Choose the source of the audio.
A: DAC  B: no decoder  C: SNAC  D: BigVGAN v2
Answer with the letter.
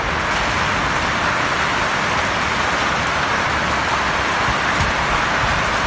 B